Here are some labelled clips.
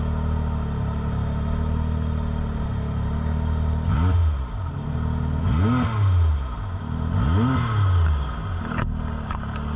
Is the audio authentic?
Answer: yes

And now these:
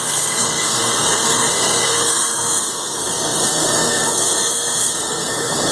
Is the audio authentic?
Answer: no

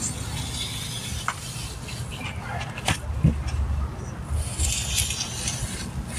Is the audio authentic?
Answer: yes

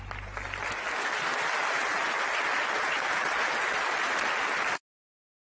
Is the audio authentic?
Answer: yes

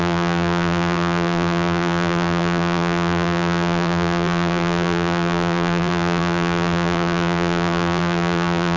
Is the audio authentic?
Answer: no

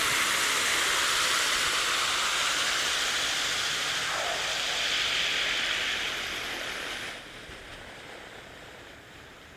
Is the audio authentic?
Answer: no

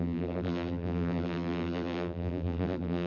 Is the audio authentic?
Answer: no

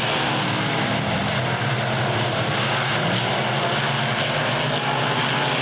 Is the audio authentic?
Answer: yes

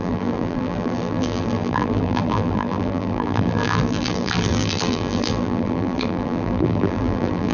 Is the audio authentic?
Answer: no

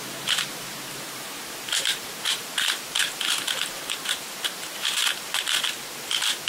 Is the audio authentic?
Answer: no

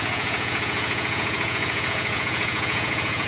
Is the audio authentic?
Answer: no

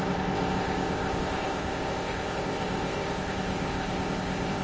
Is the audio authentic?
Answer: no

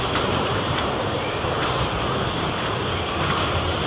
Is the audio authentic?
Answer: no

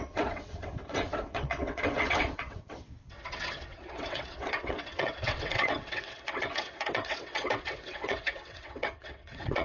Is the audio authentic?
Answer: no